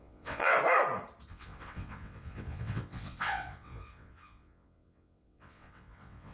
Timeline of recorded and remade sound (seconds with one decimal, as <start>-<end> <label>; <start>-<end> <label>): 0.0-0.6 remade; 0.6-1.3 recorded; 1.3-6.3 remade